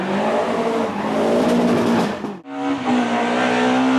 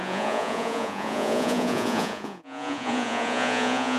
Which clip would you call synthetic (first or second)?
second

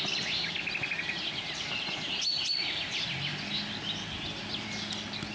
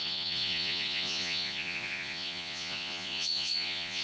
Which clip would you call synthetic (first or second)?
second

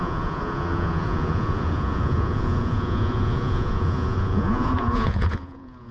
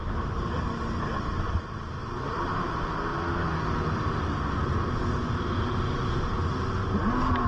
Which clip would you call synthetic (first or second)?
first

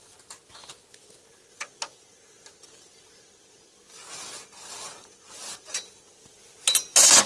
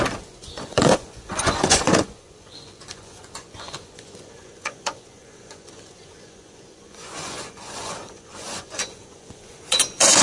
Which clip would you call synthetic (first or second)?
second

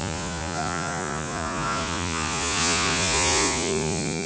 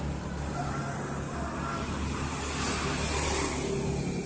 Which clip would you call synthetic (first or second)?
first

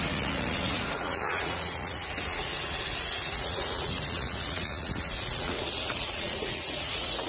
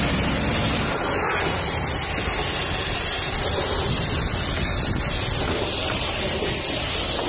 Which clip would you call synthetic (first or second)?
first